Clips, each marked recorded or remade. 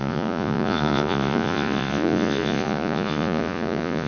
remade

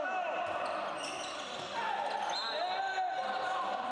recorded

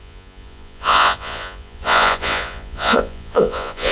remade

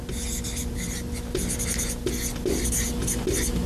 recorded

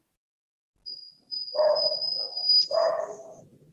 recorded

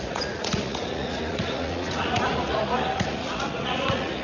remade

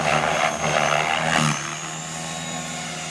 recorded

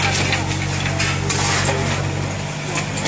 recorded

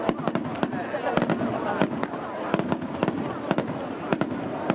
recorded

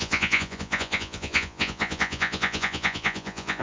remade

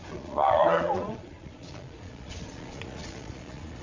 remade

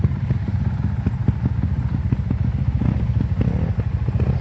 recorded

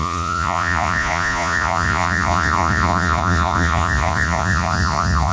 remade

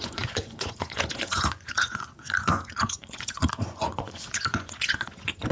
remade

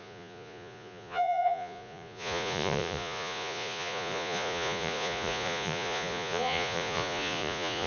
remade